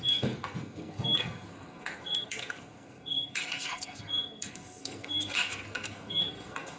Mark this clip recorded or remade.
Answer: remade